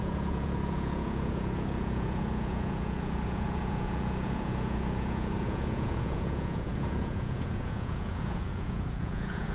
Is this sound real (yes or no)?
no